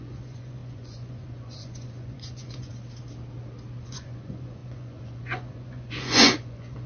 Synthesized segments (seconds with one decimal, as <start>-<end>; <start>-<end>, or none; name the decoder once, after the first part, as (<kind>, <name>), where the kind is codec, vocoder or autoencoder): 0.0-2.7 (vocoder, Vocos); 3.8-6.9